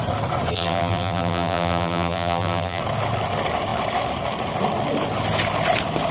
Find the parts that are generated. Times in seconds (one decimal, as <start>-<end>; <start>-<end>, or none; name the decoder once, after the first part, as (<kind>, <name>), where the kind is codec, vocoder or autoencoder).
0.5-2.8 (vocoder, BigVGAN v2)